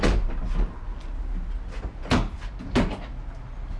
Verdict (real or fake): real